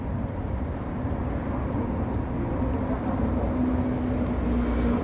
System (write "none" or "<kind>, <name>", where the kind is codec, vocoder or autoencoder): none